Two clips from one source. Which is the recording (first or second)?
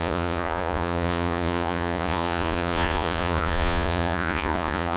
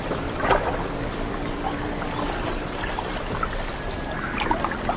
second